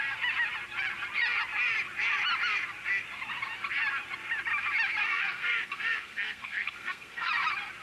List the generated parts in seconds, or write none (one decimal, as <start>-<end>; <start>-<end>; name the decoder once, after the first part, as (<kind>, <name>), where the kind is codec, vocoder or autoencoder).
5.0-7.3 (codec, SNAC)